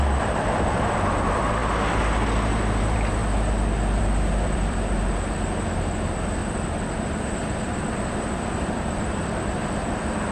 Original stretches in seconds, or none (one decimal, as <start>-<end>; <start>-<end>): 1.6-2.8; 3.2-4.0; 6.4-7.9